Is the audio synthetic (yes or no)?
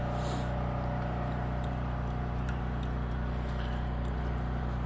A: yes